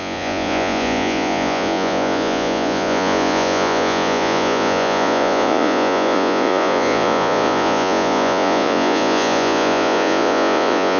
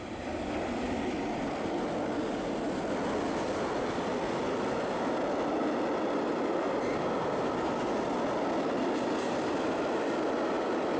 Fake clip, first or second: first